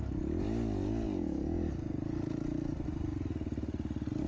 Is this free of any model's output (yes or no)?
yes